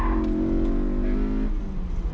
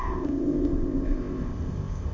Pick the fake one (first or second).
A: second